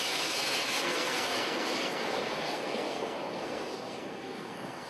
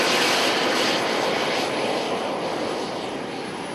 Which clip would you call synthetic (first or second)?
first